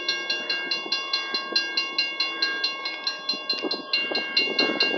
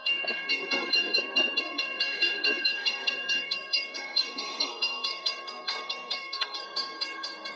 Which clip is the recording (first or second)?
first